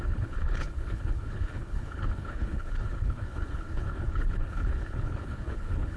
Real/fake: fake